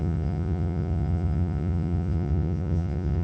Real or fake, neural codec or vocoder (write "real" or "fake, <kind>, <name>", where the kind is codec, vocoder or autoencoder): fake, vocoder, Vocos